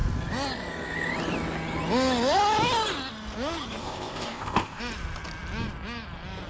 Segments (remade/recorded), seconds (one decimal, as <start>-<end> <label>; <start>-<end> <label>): 0.0-3.8 recorded; 3.8-4.8 remade; 4.8-6.5 recorded